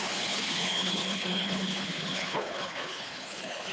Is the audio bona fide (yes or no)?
no